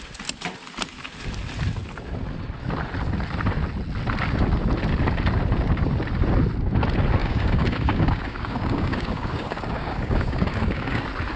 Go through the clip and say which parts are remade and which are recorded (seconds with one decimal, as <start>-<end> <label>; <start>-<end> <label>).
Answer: 0.0-7.2 recorded; 7.2-11.0 remade; 11.0-11.4 recorded